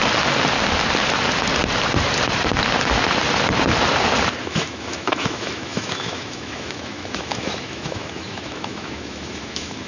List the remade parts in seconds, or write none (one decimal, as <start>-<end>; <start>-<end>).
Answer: 4.4-9.9